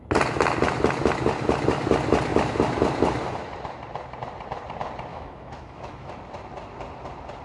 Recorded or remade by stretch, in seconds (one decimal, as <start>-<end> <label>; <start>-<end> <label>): 0.0-5.1 recorded; 5.1-6.1 remade; 6.1-7.4 recorded